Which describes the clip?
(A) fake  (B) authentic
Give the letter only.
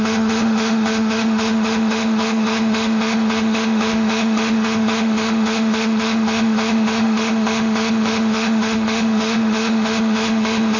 A